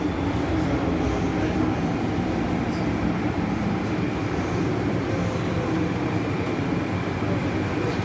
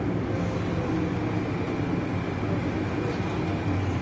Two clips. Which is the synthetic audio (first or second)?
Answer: first